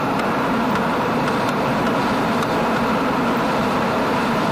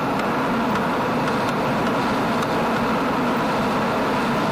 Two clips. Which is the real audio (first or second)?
second